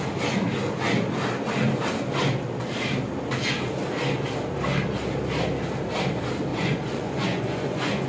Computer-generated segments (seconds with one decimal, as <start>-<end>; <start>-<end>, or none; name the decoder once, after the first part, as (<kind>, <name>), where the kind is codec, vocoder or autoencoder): 6.5-8.1 (vocoder, Vocos)